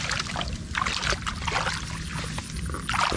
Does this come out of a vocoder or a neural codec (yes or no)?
no